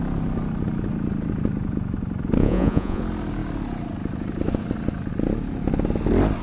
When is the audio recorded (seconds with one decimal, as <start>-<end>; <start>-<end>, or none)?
0.0-2.4; 3.0-6.4

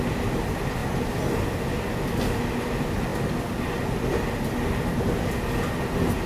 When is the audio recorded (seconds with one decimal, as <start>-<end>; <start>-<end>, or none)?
0.0-6.3

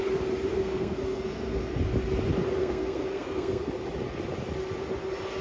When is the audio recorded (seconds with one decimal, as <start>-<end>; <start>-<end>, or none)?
0.0-0.5; 1.8-2.6; 3.7-5.4

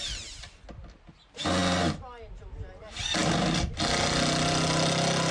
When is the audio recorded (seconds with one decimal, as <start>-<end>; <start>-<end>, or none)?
0.0-5.3